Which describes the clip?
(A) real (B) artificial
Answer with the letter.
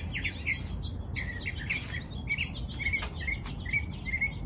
A